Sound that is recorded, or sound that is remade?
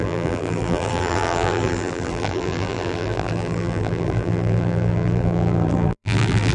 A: remade